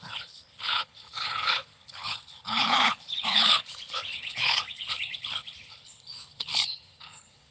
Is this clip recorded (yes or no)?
no